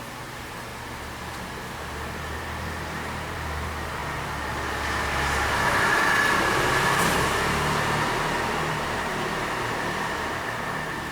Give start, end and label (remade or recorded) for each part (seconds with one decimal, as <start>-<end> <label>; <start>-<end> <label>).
0.0-0.7 remade; 0.7-2.4 recorded; 2.4-4.0 remade; 4.0-8.7 recorded; 8.7-11.1 remade